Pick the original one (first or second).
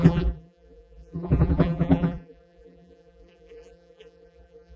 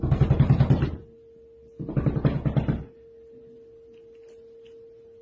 second